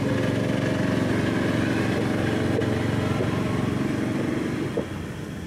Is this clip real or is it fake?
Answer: real